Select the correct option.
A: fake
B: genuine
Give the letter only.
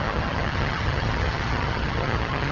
A